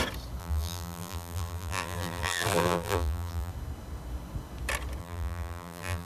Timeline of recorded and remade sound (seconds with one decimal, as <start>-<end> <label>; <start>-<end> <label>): 0.0-0.4 recorded; 0.4-3.5 remade; 3.5-5.0 recorded; 5.0-6.1 remade